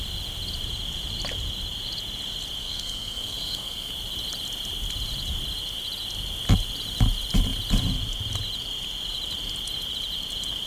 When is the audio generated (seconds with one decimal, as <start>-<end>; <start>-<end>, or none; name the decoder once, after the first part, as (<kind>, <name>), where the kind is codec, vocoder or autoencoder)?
2.6-3.9 (codec, SNAC)